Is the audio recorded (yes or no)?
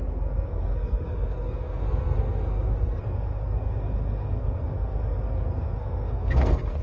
no